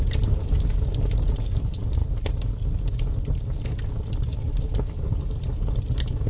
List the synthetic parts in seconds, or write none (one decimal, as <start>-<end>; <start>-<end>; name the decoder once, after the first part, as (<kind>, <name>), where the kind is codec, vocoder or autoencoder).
none